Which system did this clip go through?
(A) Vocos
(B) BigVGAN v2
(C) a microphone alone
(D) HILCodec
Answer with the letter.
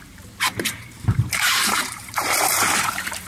B